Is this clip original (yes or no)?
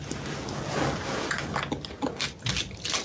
yes